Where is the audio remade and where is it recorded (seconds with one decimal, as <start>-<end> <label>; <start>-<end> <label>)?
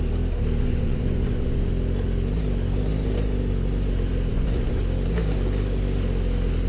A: 0.0-0.6 recorded; 0.6-1.7 remade; 1.7-4.3 recorded; 4.3-4.8 remade; 4.8-6.7 recorded